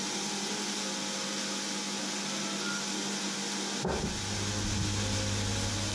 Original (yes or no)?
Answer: yes